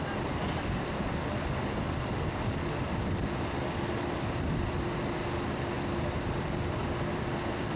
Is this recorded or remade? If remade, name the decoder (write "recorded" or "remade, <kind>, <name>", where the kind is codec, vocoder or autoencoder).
recorded